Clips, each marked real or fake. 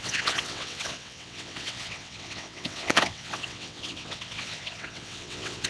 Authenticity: fake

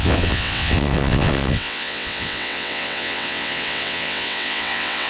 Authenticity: fake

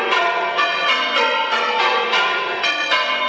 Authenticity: fake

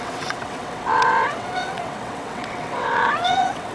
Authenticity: fake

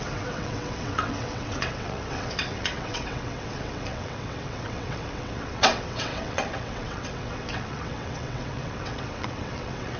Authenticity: fake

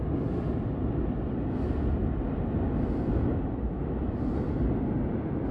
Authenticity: real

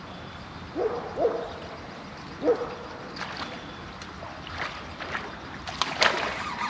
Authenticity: real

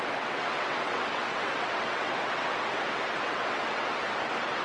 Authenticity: fake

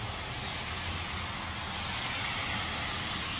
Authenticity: real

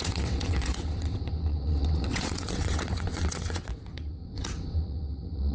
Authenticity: fake